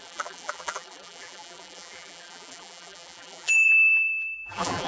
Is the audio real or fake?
fake